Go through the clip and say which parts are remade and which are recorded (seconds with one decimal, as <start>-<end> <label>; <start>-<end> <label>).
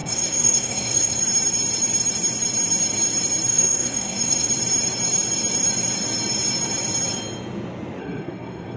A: 0.0-1.2 remade; 1.2-3.5 recorded; 3.5-4.5 remade; 4.5-8.0 recorded; 8.0-8.8 remade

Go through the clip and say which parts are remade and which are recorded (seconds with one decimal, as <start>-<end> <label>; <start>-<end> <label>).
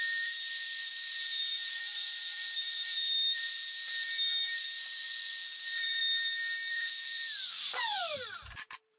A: 0.0-6.0 remade; 6.0-6.7 recorded; 6.7-9.0 remade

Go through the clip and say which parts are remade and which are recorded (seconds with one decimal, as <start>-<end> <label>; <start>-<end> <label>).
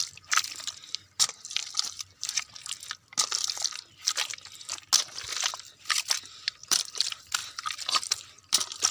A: 0.0-1.6 remade; 1.6-3.3 recorded; 3.3-4.3 remade; 4.3-5.4 recorded; 5.4-7.4 remade; 7.4-8.3 recorded; 8.3-8.9 remade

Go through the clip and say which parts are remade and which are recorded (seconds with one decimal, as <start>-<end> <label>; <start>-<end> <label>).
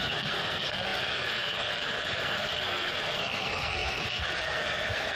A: 0.0-5.2 remade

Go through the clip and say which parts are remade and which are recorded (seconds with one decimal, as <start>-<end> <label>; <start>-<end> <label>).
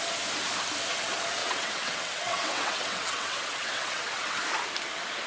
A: 0.0-1.4 recorded; 1.4-4.4 remade; 4.4-5.3 recorded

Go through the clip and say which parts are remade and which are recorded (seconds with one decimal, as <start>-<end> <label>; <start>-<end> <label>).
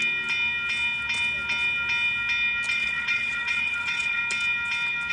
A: 0.0-2.7 recorded; 2.7-4.2 remade; 4.2-5.1 recorded